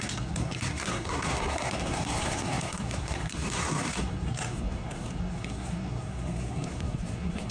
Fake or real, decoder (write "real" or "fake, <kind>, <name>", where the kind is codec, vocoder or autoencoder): fake, codec, SNAC